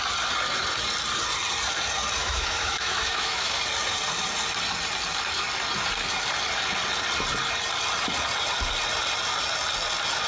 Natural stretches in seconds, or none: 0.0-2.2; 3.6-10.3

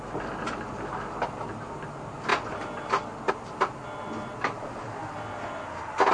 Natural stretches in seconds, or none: 0.0-6.1